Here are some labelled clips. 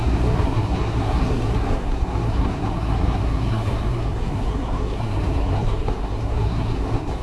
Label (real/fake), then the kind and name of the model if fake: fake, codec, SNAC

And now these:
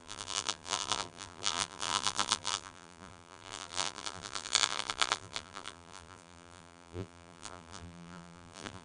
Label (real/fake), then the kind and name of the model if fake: fake, vocoder, BigVGAN v2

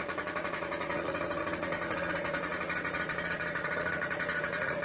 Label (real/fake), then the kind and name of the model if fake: fake, vocoder, Vocos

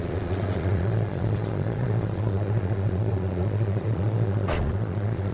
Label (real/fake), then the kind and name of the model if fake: fake, vocoder, Vocos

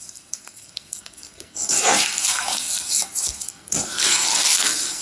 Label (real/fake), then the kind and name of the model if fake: fake, codec, SNAC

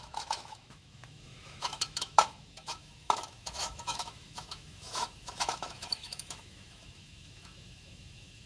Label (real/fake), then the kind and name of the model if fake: fake, autoencoder, DAC-VAE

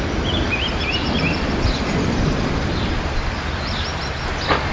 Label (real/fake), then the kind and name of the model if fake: real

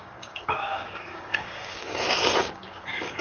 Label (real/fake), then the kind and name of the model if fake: fake, codec, DAC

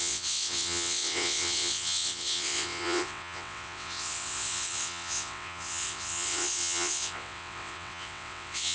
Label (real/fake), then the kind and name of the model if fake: fake, vocoder, WaveNeXt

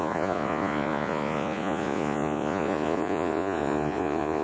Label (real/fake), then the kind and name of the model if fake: fake, vocoder, Vocos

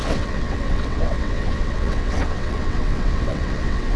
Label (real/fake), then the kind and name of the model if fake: fake, vocoder, WaveNeXt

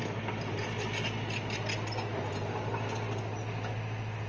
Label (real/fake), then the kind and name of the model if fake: real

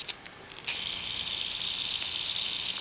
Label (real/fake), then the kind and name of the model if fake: real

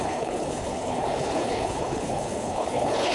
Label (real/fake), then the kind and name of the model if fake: fake, codec, HILCodec